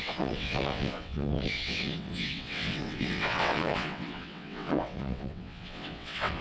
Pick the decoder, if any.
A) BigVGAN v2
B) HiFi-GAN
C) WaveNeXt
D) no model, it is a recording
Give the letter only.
C